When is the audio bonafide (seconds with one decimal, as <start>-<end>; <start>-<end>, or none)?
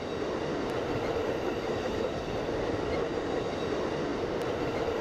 0.0-1.2; 2.3-3.1; 3.6-4.1